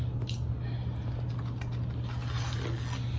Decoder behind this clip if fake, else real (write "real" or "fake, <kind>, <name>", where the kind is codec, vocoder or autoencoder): real